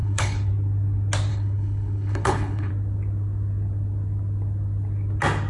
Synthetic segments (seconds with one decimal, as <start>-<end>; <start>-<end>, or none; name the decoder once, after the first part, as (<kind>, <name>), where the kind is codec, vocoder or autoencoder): 0.0-0.5 (codec, HILCodec); 1.3-2.7